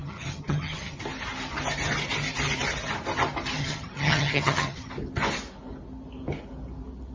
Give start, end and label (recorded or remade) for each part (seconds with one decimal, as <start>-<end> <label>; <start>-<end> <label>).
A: 0.0-1.0 remade; 1.0-3.6 recorded; 3.6-4.9 remade; 4.9-7.1 recorded